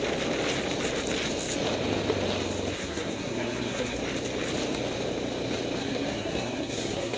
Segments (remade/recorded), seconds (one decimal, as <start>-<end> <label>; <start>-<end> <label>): 0.0-2.8 recorded; 2.8-4.0 remade; 4.0-5.8 recorded; 5.8-7.2 remade